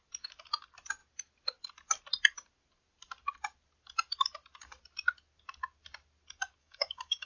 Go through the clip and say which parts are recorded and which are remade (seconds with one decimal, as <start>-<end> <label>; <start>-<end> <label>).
0.0-6.6 recorded; 6.6-7.3 remade